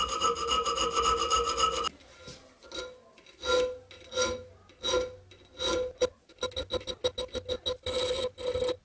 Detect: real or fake real